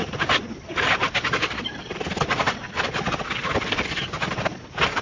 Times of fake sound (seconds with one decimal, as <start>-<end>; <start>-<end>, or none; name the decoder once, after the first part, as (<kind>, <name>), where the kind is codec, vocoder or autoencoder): 0.0-3.0 (vocoder, BigVGAN v2)